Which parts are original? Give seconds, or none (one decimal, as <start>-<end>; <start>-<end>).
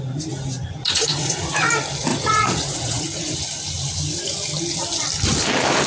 0.0-0.8; 1.7-2.1; 3.0-5.9